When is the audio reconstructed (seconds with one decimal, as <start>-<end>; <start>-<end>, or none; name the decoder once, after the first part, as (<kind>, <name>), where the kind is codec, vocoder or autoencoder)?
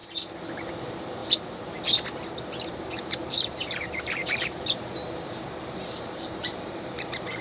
0.7-1.2 (vocoder, BigVGAN v2); 2.7-7.4